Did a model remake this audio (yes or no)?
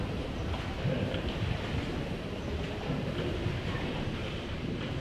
yes